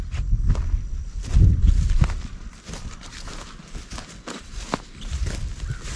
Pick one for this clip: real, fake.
real